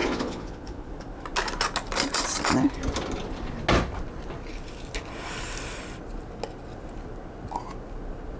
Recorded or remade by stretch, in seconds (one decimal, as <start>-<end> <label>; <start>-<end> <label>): 0.0-0.9 remade; 0.9-8.4 recorded